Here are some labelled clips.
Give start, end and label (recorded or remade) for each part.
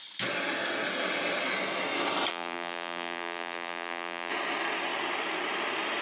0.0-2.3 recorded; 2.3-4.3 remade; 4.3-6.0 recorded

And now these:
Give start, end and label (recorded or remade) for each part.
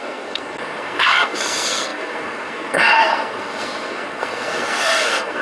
0.0-5.4 remade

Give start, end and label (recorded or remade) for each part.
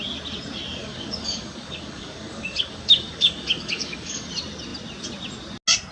0.0-0.8 recorded; 0.8-4.3 remade; 4.3-5.9 recorded